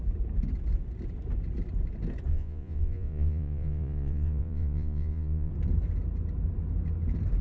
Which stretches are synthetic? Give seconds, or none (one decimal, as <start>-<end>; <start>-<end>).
2.3-5.5